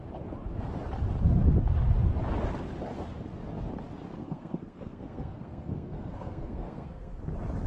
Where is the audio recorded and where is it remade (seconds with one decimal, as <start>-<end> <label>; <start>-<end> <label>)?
0.0-4.2 recorded; 4.2-7.2 remade; 7.2-7.7 recorded